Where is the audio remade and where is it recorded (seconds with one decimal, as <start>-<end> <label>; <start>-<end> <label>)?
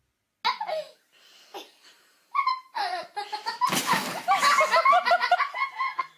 0.0-5.5 recorded; 5.5-6.2 remade